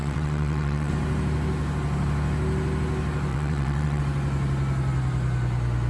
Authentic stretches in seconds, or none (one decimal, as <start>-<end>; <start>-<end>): 0.9-3.3; 4.0-5.9